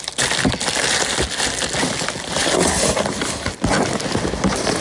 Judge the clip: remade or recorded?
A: recorded